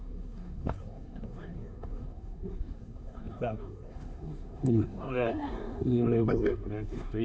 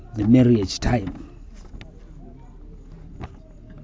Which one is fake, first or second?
first